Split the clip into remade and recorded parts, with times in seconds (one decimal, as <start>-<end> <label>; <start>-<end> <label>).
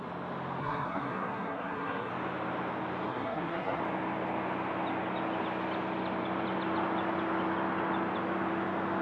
0.0-0.6 recorded; 0.6-2.1 remade; 2.1-3.1 recorded; 3.1-3.8 remade; 3.8-9.0 recorded